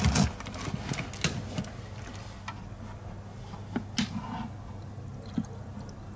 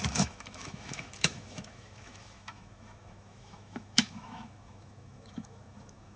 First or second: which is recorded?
first